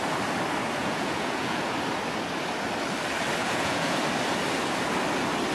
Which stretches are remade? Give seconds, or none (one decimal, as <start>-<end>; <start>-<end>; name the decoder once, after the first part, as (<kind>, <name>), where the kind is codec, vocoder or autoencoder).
0.8-1.6 (vocoder, Vocos); 3.4-4.0